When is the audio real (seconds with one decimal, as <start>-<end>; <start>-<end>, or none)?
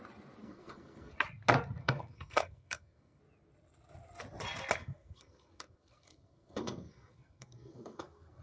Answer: 0.0-0.4; 1.1-1.8; 3.2-4.8